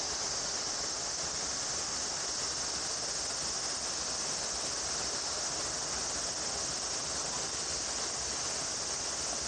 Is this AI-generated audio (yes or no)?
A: no